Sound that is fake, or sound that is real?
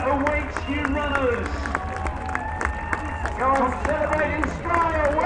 real